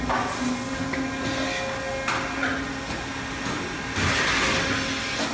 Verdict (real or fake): real